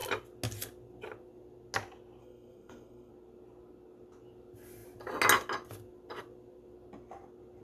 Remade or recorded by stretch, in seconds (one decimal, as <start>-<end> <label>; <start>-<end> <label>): 0.0-2.2 recorded; 2.2-3.1 remade; 3.1-7.6 recorded

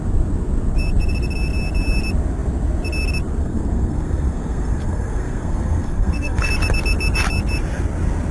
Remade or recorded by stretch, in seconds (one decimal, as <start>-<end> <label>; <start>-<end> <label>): 0.0-3.4 recorded; 3.4-6.5 remade; 6.5-8.3 recorded

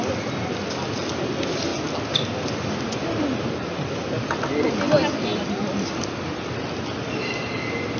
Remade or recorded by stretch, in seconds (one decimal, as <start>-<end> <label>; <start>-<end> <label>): 0.0-8.0 recorded

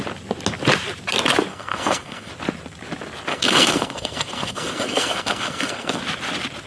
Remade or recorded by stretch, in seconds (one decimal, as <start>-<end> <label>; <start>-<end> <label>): 0.0-1.5 recorded; 1.5-2.3 remade; 2.3-3.3 recorded; 3.3-6.0 remade; 6.0-6.7 recorded

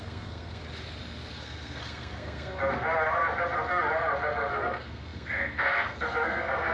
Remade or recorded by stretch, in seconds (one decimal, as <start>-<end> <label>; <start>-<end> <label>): 0.0-0.6 remade; 0.6-1.3 recorded; 1.3-2.6 remade; 2.6-4.5 recorded; 4.5-6.7 remade

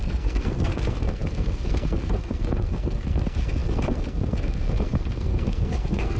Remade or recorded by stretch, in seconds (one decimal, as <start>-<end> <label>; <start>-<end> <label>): 0.0-6.2 remade

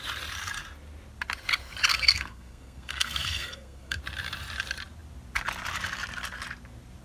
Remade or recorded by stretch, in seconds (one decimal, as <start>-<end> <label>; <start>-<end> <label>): 0.0-1.9 recorded; 1.9-4.0 remade; 4.0-7.0 recorded